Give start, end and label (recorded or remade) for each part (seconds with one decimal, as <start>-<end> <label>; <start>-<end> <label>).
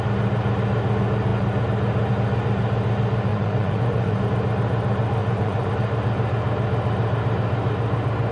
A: 0.0-3.3 recorded; 3.3-4.2 remade; 4.2-5.2 recorded; 5.2-5.7 remade; 5.7-8.3 recorded